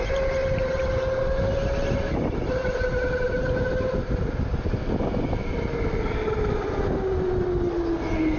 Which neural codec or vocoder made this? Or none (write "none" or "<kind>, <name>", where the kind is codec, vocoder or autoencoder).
none